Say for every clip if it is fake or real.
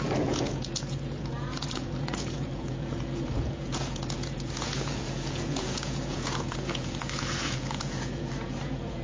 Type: fake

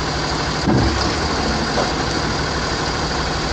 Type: real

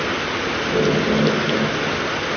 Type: real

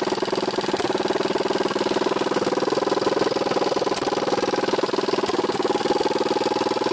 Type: real